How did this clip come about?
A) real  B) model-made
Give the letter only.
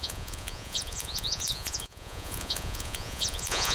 B